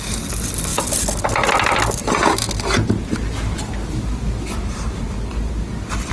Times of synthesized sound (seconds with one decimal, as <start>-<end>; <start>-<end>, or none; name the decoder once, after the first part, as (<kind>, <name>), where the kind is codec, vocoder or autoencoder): none